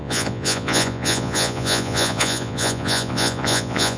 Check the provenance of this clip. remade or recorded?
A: remade